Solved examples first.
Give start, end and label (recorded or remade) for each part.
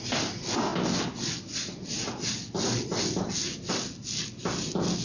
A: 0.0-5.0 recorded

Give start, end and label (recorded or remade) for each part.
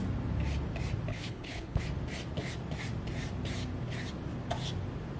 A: 0.0-1.1 recorded; 1.1-1.8 remade; 1.8-5.2 recorded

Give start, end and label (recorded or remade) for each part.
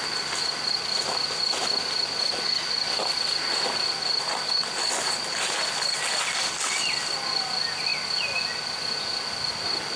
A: 0.0-10.0 recorded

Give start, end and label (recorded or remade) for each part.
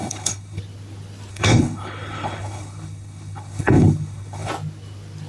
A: 0.0-0.6 remade; 0.6-1.3 recorded; 1.3-4.5 remade; 4.5-5.3 recorded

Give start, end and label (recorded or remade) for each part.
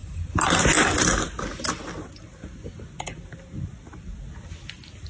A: 0.0-5.1 recorded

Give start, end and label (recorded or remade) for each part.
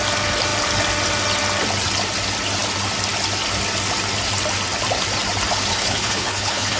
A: 0.0-5.7 recorded; 5.7-6.8 remade